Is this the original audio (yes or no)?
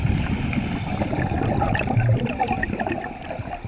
yes